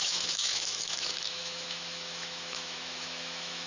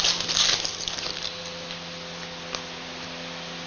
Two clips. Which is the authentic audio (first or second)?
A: second